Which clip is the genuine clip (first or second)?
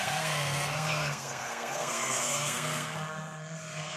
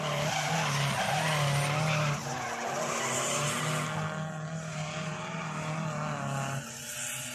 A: second